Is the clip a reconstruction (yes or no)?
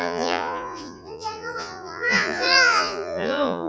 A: yes